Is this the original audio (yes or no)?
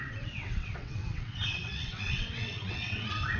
no